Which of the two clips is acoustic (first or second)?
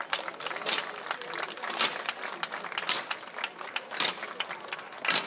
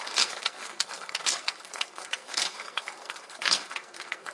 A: first